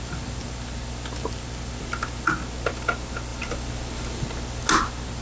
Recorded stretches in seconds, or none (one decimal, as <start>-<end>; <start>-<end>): 0.0-5.2